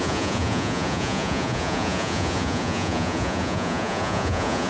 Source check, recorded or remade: remade